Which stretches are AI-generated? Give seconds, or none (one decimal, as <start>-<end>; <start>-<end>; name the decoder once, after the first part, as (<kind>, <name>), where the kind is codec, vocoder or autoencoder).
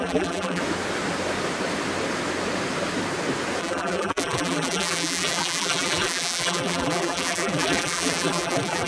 0.0-0.6 (vocoder, BigVGAN v2); 3.6-8.9